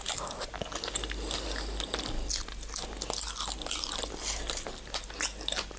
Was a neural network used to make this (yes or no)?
no